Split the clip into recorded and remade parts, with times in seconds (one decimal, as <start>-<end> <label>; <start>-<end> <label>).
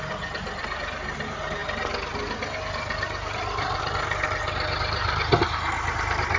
0.0-6.4 recorded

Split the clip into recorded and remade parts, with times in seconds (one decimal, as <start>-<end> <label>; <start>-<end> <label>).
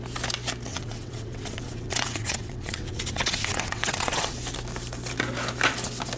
0.0-0.7 recorded; 0.7-4.4 remade; 4.4-6.2 recorded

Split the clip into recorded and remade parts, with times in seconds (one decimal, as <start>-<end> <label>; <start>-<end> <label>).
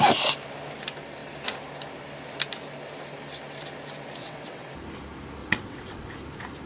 0.0-4.2 recorded; 4.2-4.7 remade; 4.7-5.4 recorded; 5.4-6.1 remade; 6.1-6.7 recorded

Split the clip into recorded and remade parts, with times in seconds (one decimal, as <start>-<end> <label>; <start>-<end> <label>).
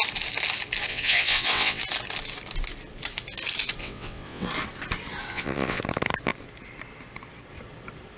0.0-0.9 recorded; 0.9-1.8 remade; 1.8-3.8 recorded; 3.8-4.5 remade; 4.5-5.3 recorded; 5.3-5.8 remade; 5.8-8.2 recorded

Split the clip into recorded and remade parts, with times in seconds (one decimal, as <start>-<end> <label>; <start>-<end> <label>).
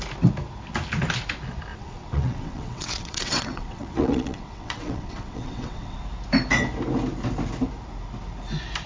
0.0-1.7 recorded; 1.7-6.0 remade; 6.0-8.9 recorded